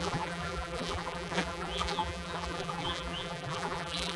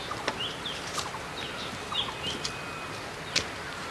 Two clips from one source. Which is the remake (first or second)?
first